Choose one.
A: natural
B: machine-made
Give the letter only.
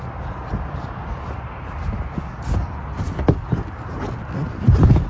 A